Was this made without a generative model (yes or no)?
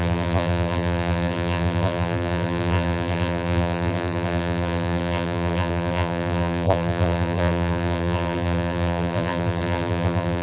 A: no